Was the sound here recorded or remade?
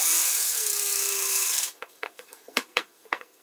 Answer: remade